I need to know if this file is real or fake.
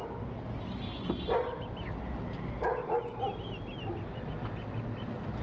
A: real